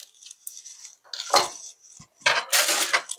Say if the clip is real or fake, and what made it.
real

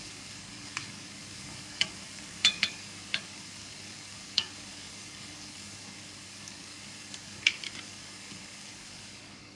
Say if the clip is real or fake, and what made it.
fake, codec, DAC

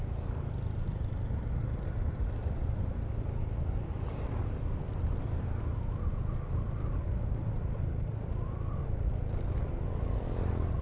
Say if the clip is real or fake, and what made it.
real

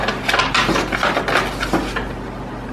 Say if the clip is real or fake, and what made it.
real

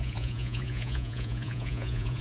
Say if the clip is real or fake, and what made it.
fake, vocoder, Vocos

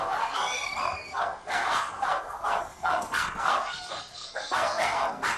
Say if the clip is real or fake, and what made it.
fake, codec, SNAC